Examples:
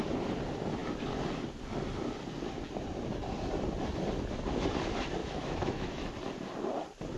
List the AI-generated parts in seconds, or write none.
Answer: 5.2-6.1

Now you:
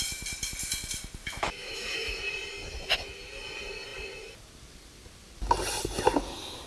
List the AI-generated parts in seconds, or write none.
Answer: 1.2-2.2

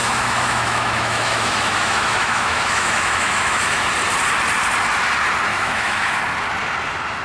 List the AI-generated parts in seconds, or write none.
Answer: 0.0-3.9; 5.5-6.2

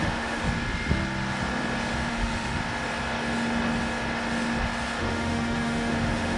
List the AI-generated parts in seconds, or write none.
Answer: 0.0-0.4; 2.1-2.6; 5.0-6.4